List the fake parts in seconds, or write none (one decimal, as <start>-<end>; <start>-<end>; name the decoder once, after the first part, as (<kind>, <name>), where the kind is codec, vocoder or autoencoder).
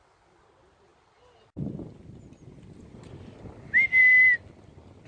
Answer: none